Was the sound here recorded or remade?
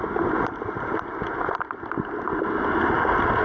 recorded